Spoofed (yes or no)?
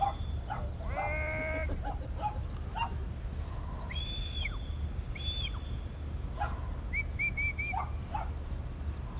no